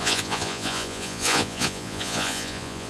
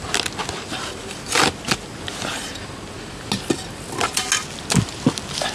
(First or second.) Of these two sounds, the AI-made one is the first